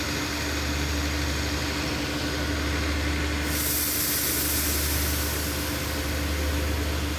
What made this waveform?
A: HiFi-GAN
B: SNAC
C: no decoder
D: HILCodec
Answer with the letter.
C